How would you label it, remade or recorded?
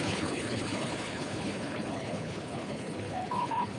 remade